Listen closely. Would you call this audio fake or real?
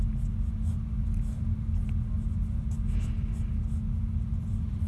real